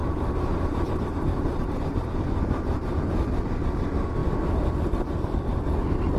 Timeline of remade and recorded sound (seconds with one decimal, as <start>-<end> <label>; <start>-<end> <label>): 0.0-3.0 remade; 3.0-6.2 recorded